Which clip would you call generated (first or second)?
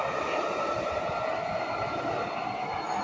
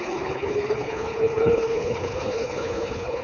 second